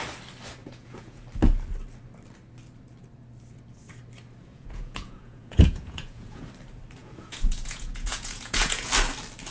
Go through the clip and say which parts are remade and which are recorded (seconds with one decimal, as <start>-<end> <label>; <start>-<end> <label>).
0.0-0.6 recorded; 0.6-1.2 remade; 1.2-4.5 recorded; 4.5-6.5 remade; 6.5-7.0 recorded; 7.0-8.9 remade; 8.9-9.5 recorded